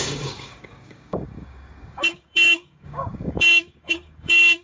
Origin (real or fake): fake